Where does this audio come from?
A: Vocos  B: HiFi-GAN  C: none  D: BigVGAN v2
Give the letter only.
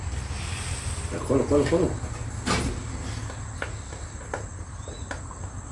C